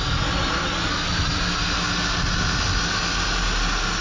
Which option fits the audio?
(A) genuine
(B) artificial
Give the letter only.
A